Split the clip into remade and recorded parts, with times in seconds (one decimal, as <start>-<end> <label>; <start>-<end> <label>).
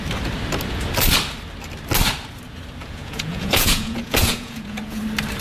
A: 0.0-2.8 recorded; 2.8-5.0 remade; 5.0-5.4 recorded